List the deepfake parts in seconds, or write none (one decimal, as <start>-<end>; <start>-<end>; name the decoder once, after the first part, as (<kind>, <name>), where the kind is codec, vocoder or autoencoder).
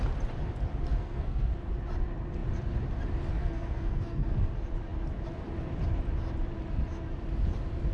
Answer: 0.9-1.5 (codec, SNAC); 3.4-4.5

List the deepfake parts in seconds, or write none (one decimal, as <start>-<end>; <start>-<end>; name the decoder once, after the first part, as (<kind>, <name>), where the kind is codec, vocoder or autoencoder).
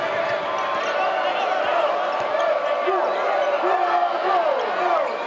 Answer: none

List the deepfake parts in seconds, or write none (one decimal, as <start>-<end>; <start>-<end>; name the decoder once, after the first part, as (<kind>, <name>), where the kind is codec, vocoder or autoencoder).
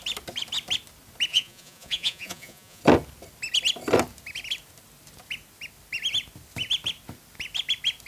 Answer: 1.3-2.8 (vocoder, Vocos)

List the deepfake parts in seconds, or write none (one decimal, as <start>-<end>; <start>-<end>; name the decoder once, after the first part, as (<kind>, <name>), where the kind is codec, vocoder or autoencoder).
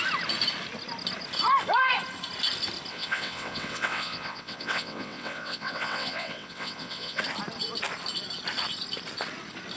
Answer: 2.9-7.2 (vocoder, WaveNeXt)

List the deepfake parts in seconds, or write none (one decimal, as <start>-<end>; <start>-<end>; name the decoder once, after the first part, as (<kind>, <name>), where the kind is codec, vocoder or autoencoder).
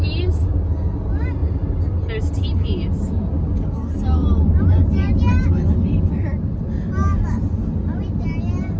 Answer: none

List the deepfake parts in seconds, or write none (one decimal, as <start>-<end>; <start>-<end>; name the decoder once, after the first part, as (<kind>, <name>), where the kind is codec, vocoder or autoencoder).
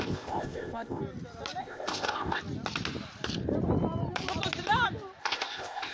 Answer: 0.0-1.0 (codec, ZipCodec); 1.6-2.4; 5.2-5.9